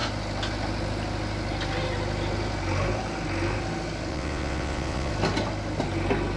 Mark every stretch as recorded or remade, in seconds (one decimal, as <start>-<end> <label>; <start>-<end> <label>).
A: 0.0-4.1 recorded; 4.1-5.1 remade; 5.1-6.4 recorded